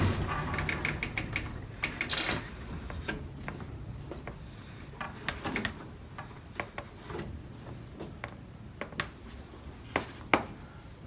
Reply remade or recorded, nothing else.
recorded